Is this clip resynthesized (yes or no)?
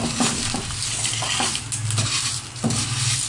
no